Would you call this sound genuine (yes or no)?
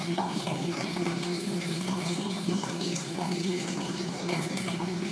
no